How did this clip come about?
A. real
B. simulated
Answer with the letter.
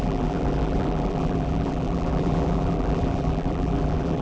B